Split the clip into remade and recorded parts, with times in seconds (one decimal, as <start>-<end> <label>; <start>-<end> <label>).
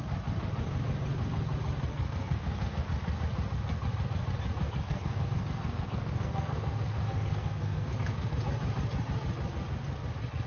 0.0-1.9 recorded; 1.9-2.8 remade; 2.8-4.6 recorded; 4.6-8.3 remade; 8.3-10.5 recorded